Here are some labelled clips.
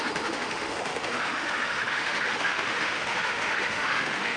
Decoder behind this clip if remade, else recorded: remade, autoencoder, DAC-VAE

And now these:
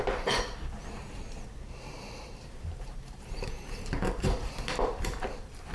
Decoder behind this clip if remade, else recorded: remade, vocoder, BigVGAN v2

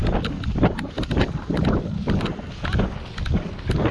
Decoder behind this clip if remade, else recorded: recorded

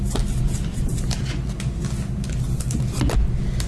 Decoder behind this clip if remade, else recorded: recorded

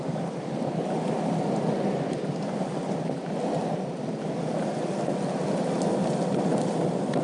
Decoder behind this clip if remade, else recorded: recorded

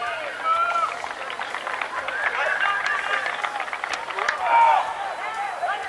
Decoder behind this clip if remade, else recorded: recorded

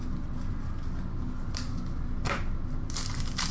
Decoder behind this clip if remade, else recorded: recorded